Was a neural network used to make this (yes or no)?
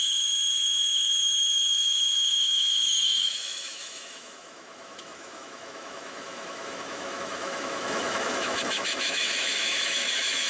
yes